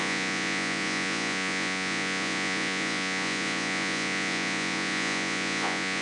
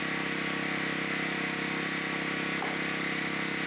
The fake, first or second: first